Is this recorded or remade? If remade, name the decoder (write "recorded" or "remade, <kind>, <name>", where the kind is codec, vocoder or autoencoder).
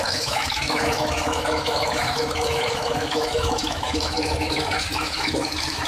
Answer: remade, autoencoder, DAC-VAE